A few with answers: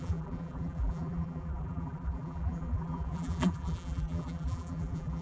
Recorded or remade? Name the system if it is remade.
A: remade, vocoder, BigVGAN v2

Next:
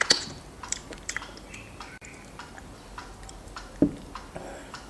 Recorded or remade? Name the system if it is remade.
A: remade, vocoder, BigVGAN v2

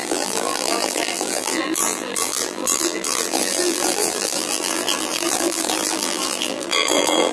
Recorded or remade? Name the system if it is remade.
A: remade, vocoder, BigVGAN v2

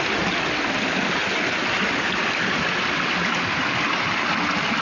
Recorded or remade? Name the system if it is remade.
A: recorded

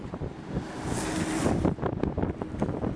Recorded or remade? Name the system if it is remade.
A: recorded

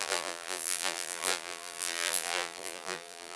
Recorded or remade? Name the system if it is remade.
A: remade, vocoder, BigVGAN v2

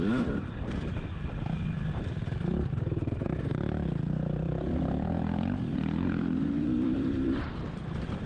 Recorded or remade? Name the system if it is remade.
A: remade, vocoder, BigVGAN v2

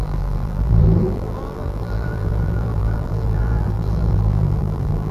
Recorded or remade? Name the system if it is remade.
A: remade, vocoder, BigVGAN v2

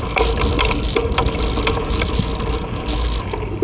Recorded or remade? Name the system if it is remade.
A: recorded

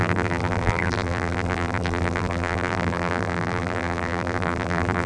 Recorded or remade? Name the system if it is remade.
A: remade, vocoder, BigVGAN v2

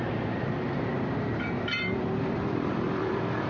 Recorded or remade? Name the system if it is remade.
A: remade, vocoder, BigVGAN v2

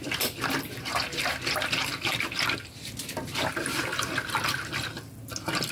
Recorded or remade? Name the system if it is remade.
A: recorded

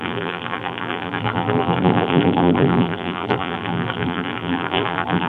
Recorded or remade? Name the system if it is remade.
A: remade, vocoder, BigVGAN v2